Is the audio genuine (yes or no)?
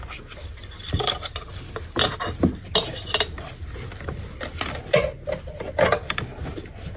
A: yes